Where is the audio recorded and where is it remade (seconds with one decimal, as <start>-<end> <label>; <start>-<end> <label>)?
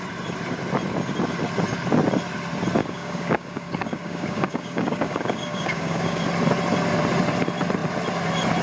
0.0-2.8 recorded; 2.8-6.3 remade; 6.3-8.6 recorded